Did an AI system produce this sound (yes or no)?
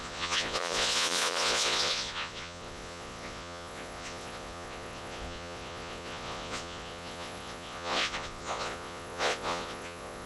yes